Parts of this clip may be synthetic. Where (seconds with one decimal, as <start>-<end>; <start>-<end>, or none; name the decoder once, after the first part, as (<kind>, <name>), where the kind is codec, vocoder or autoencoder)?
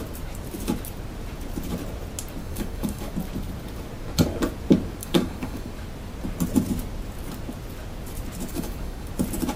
2.4-3.1 (codec, DAC); 5.0-5.7; 8.5-9.1